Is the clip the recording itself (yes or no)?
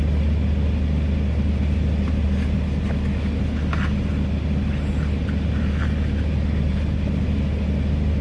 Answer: yes